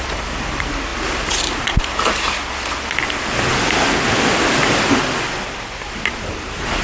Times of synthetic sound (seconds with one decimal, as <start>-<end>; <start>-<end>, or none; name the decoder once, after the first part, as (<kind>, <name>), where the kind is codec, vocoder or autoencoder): none